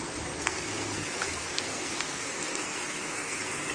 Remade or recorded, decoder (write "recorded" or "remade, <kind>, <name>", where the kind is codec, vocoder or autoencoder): remade, codec, SNAC